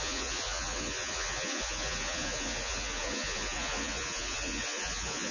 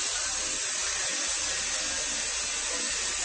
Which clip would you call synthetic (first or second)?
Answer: first